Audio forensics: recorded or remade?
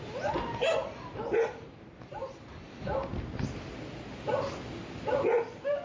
recorded